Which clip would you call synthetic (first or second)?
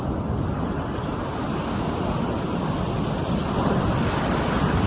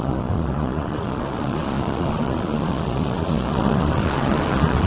second